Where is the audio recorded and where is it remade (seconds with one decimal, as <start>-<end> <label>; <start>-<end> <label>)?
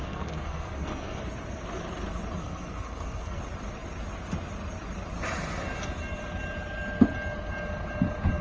0.0-1.2 remade; 1.2-2.4 recorded; 2.4-3.4 remade; 3.4-8.4 recorded